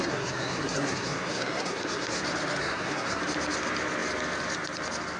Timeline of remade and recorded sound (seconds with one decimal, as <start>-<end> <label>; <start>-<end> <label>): 0.0-2.2 remade; 2.2-2.6 recorded; 2.6-3.2 remade; 3.2-5.2 recorded